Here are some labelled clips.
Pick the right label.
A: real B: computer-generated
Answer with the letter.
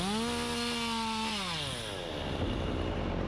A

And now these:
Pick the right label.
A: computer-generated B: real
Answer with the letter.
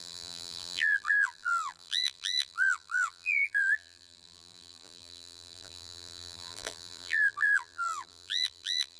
A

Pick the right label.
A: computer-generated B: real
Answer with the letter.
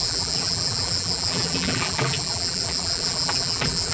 A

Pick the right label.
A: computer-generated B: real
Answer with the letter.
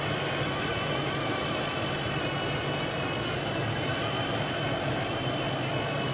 B